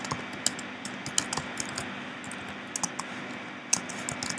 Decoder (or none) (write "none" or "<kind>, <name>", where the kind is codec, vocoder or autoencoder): none